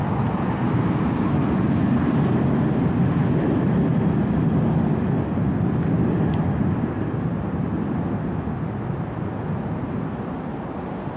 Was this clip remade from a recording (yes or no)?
no